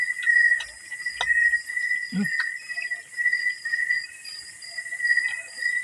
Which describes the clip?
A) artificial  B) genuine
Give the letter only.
B